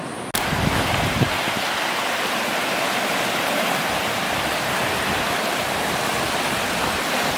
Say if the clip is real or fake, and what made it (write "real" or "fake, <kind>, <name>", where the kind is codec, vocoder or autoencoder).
real